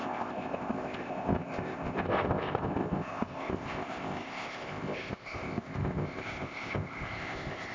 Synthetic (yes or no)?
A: yes